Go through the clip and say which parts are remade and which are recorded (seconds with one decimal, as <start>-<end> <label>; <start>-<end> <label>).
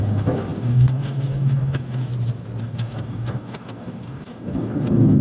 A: 0.0-2.1 remade; 2.1-2.6 recorded; 2.6-5.2 remade